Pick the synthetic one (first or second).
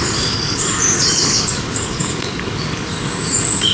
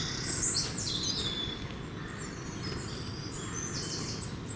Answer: first